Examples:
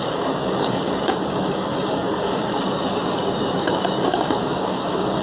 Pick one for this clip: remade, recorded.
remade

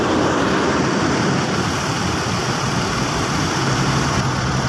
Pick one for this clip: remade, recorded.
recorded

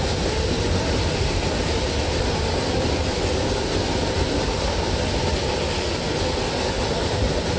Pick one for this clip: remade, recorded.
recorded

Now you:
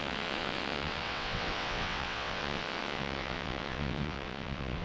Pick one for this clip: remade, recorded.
remade